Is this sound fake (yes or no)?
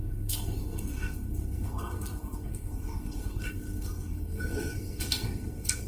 yes